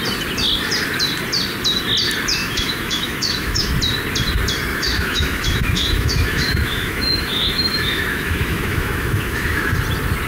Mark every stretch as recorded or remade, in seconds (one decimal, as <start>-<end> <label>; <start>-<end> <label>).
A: 0.0-2.4 recorded; 2.4-3.7 remade; 3.7-4.7 recorded; 4.7-9.7 remade; 9.7-10.3 recorded